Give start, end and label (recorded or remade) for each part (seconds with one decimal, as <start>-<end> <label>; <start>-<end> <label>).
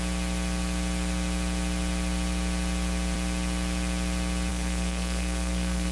0.0-4.5 recorded; 4.5-5.9 remade